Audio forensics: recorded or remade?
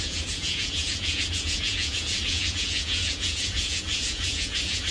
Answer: remade